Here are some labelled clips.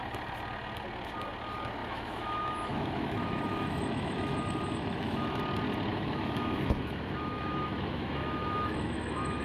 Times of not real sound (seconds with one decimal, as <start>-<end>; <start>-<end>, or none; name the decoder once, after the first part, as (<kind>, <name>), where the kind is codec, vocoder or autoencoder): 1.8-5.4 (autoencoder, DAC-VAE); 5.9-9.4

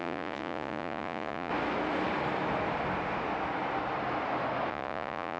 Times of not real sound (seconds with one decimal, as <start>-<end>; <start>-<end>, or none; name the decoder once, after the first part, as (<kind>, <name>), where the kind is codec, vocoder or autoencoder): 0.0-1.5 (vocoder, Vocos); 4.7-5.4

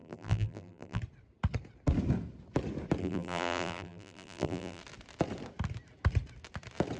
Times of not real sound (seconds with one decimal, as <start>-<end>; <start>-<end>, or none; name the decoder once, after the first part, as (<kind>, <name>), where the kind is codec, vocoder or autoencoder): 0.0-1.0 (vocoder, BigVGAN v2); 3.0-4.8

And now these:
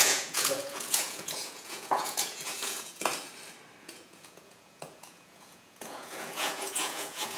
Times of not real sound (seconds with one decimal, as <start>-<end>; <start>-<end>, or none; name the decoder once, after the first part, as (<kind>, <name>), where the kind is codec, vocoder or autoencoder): 0.0-3.1 (vocoder, Vocos); 3.8-7.4

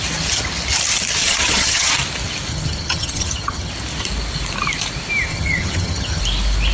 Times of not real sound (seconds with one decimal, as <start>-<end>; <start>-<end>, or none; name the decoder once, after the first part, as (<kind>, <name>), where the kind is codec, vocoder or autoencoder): 1.2-1.9 (vocoder, HiFi-GAN); 2.5-3.7; 5.3-6.2